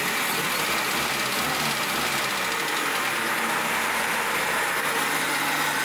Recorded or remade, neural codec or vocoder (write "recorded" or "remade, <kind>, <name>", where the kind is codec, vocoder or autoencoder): recorded